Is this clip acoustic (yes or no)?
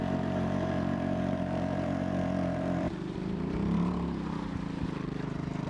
no